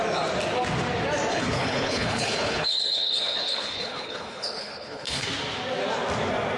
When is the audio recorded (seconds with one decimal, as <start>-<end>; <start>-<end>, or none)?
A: 0.0-1.3; 5.3-6.6